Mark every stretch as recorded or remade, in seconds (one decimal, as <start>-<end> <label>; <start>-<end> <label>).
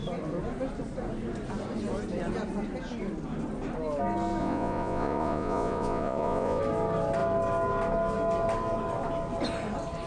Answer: 0.0-4.4 recorded; 4.4-6.6 remade; 6.6-10.1 recorded